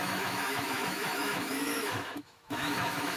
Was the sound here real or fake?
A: fake